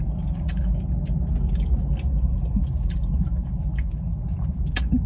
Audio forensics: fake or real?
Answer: real